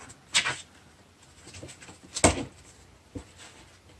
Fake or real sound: real